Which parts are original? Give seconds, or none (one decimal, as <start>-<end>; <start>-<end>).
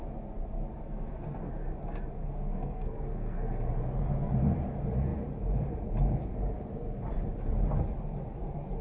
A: 0.0-0.8; 1.5-2.2; 3.7-8.8